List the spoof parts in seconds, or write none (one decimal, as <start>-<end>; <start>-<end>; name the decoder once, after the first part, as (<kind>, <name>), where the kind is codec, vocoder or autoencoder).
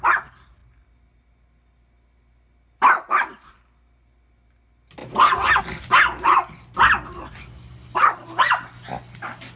none